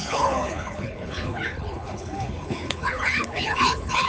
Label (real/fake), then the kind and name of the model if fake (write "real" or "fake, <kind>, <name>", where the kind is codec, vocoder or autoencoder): fake, codec, HILCodec